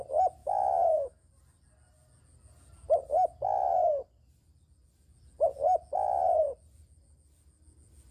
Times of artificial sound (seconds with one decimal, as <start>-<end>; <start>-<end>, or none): 0.4-1.3